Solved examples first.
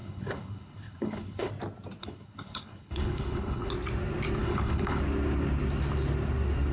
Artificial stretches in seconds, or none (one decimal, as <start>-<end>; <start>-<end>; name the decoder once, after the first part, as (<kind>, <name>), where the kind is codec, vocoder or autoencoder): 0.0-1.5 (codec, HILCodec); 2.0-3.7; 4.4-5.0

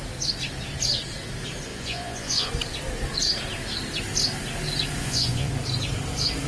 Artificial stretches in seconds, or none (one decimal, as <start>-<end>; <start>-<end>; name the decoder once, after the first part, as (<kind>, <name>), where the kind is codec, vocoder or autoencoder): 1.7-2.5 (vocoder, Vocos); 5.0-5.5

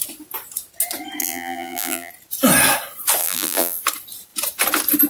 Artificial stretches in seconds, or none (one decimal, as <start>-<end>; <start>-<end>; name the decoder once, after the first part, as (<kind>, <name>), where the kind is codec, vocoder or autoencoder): 1.2-2.1 (vocoder, BigVGAN v2); 3.2-3.8

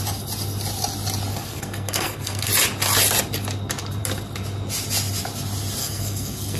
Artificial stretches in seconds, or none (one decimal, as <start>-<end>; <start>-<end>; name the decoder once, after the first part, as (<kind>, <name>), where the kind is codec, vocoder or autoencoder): 1.3-2.5 (codec, SNAC); 5.8-6.6

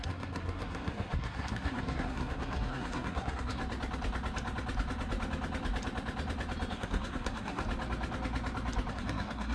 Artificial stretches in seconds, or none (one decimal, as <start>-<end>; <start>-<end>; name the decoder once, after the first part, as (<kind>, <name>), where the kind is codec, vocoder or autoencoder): 0.0-3.6 (codec, SNAC); 6.7-7.6; 8.9-9.5

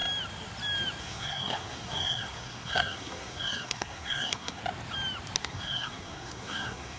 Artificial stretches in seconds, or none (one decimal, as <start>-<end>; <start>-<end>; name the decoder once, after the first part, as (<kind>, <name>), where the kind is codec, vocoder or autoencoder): 1.0-4.6 (codec, SNAC); 5.4-7.0

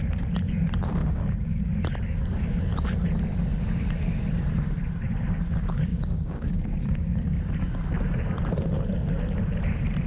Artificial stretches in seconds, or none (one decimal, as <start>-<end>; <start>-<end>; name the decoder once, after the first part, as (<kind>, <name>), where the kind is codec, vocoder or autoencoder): 1.0-1.7 (codec, DAC); 5.9-7.4